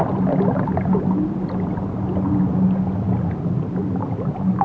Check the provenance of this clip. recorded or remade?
recorded